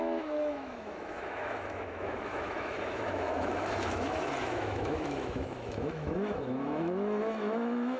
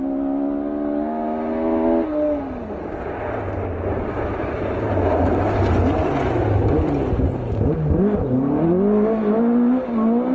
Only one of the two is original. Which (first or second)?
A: second